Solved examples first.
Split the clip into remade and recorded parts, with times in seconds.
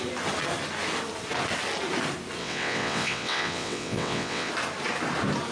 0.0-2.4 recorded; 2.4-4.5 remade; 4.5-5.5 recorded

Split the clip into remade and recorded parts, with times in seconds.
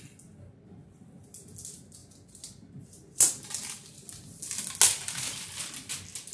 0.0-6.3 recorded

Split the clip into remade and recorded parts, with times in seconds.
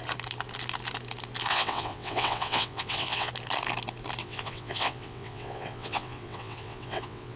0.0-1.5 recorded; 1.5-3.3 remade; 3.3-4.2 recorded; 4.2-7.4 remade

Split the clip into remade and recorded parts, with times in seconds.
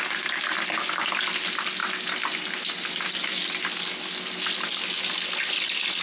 0.0-6.0 recorded